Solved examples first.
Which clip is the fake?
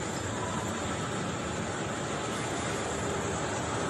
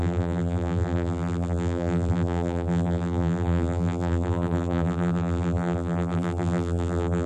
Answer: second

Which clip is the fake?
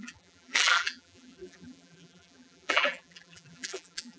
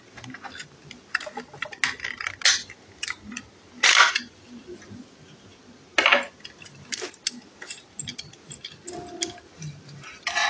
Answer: first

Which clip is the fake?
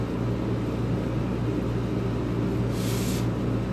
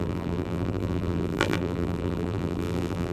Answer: second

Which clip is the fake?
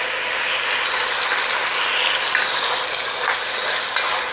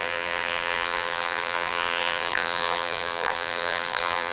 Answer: second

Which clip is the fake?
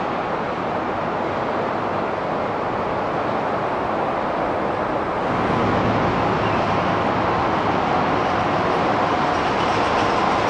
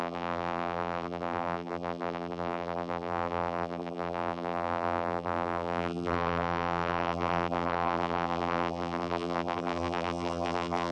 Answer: second